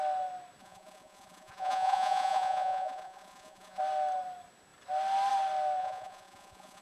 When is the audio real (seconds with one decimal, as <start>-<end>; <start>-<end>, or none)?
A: 0.0-0.6; 3.8-5.8